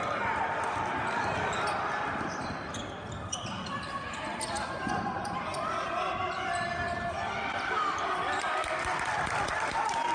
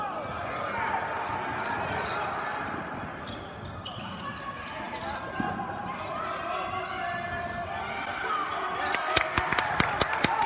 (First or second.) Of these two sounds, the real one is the second